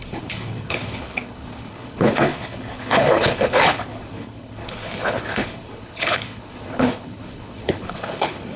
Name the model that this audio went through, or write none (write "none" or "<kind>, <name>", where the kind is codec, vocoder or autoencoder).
codec, HILCodec